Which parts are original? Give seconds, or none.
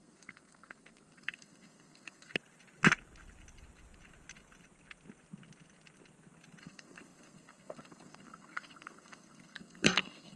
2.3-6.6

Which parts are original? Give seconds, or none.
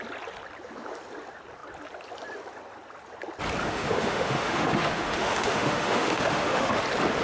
0.0-3.6; 6.8-7.2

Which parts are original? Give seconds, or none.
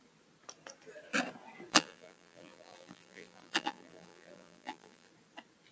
0.0-1.7; 5.1-5.7